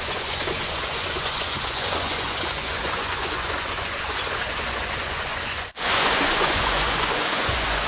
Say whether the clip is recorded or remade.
remade